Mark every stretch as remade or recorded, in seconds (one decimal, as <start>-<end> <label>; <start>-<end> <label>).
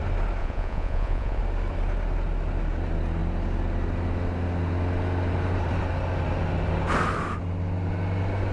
0.0-0.4 recorded; 0.4-1.4 remade; 1.4-8.5 recorded